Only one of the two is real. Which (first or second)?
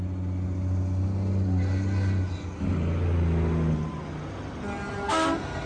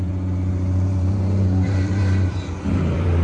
first